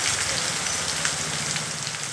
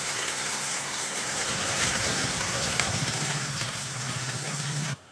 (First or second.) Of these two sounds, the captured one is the first